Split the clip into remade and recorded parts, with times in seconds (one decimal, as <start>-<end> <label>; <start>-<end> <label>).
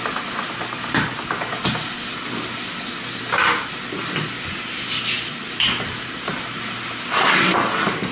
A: 0.0-8.1 recorded